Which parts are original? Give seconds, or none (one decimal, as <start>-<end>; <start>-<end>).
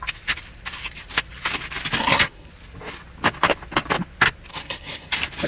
0.0-2.0; 2.5-4.5; 5.1-5.5